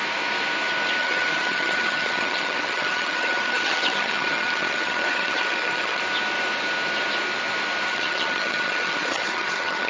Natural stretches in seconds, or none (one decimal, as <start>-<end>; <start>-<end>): 0.0-1.0; 6.0-7.9